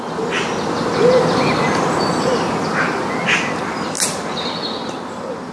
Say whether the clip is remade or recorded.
recorded